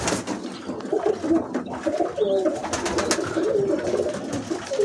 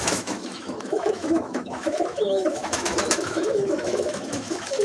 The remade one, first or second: second